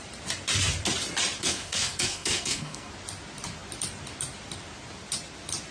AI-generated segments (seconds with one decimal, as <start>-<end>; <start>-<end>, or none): 1.4-2.9